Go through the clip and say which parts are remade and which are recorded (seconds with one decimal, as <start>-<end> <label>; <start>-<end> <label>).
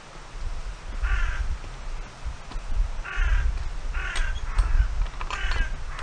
0.0-6.0 recorded